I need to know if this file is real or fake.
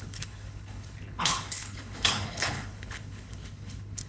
fake